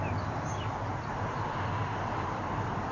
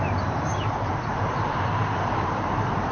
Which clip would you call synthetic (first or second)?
second